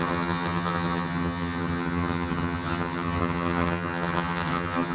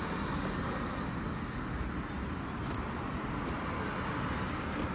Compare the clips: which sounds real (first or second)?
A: second